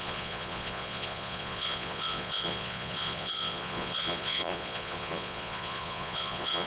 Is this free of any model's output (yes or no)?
no